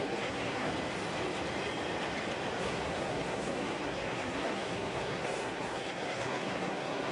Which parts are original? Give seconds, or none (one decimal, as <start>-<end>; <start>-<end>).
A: 0.7-2.6